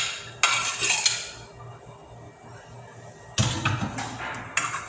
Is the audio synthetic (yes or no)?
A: no